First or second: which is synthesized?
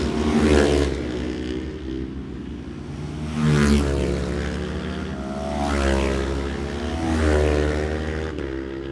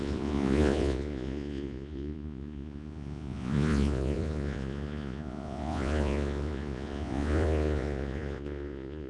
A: second